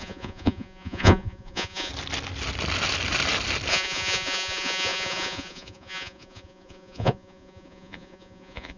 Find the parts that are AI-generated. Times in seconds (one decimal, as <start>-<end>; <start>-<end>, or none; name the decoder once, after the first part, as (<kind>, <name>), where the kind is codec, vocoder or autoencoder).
0.0-1.9 (vocoder, Vocos); 3.7-8.8